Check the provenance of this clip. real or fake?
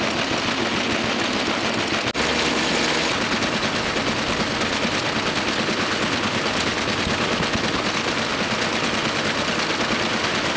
real